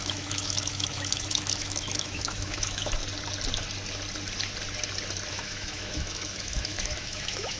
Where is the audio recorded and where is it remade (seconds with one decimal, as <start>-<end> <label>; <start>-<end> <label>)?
0.0-3.0 remade; 3.0-5.3 recorded; 5.3-7.6 remade